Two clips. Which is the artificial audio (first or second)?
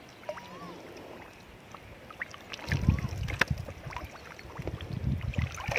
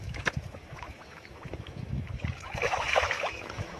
second